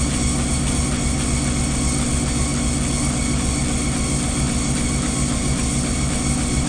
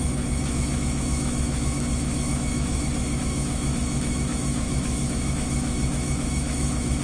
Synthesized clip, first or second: second